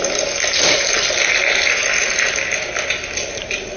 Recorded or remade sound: recorded